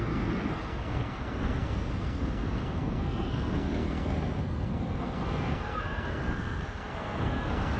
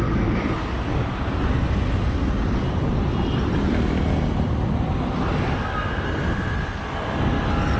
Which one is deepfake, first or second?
first